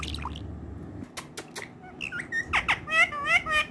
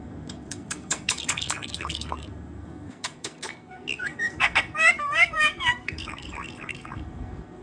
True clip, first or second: first